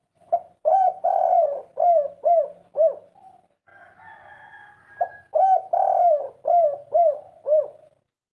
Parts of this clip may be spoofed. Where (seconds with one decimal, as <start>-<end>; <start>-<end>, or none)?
0.0-1.6